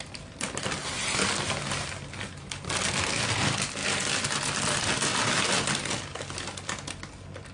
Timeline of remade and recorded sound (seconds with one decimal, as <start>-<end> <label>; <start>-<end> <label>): 0.0-3.8 recorded; 3.8-4.8 remade; 4.8-7.5 recorded